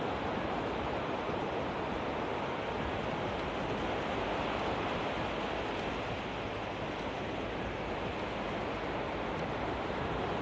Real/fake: real